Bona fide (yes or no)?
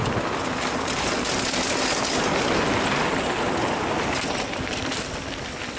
yes